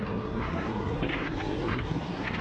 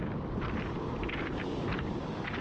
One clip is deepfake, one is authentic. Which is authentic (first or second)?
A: second